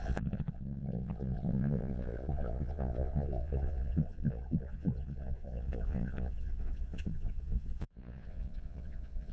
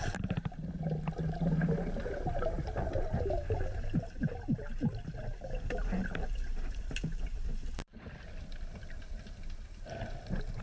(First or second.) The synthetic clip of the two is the first